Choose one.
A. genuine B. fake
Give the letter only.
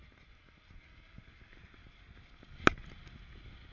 A